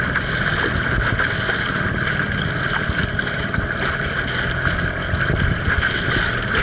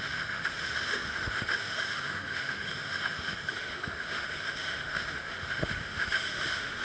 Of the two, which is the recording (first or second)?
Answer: first